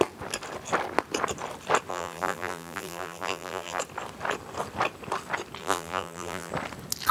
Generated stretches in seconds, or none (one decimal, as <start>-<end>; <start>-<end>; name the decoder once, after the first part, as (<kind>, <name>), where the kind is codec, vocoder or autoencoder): 1.9-3.8 (vocoder, BigVGAN v2); 5.6-6.5